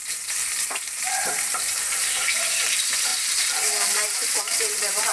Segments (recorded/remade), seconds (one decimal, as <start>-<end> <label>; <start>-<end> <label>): 0.0-5.1 remade